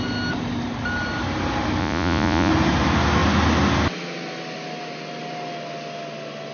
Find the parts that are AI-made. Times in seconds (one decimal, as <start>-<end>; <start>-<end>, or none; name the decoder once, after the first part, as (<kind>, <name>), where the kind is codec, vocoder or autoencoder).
1.8-2.5 (vocoder, Vocos)